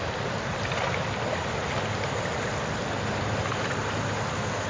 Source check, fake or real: real